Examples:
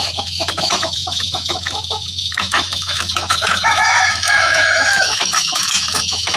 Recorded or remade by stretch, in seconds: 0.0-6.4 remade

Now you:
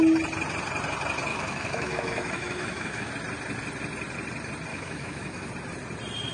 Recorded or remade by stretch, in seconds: 0.0-1.3 recorded; 1.3-3.1 remade; 3.1-4.7 recorded; 4.7-5.5 remade; 5.5-6.3 recorded

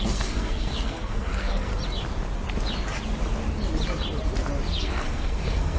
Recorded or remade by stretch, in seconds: 0.0-1.7 remade; 1.7-4.8 recorded; 4.8-5.8 remade

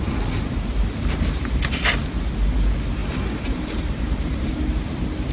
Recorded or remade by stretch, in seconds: 0.0-3.0 recorded; 3.0-4.6 remade; 4.6-5.3 recorded